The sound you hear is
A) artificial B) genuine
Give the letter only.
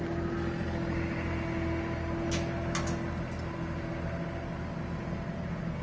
B